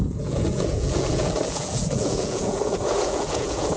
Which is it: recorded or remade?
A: remade